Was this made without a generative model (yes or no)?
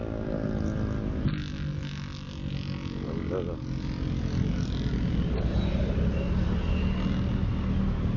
yes